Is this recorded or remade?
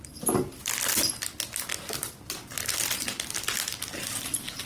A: recorded